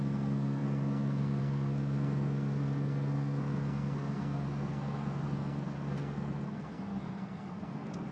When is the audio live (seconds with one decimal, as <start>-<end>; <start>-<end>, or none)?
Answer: none